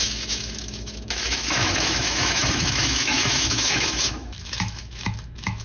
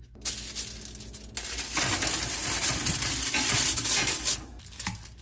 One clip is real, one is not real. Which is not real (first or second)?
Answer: first